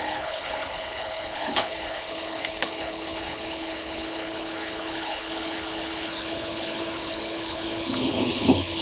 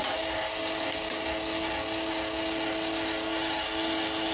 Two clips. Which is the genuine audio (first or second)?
second